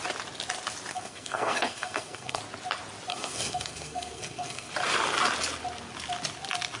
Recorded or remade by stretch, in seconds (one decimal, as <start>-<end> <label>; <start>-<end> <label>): 0.0-0.9 recorded; 0.9-2.4 remade; 2.4-3.1 recorded; 3.1-4.7 remade; 4.7-6.8 recorded